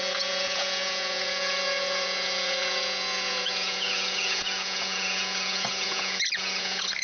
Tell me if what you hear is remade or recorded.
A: remade